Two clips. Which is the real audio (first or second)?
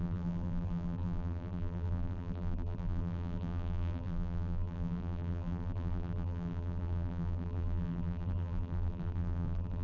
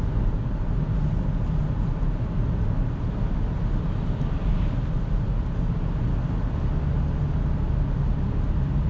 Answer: second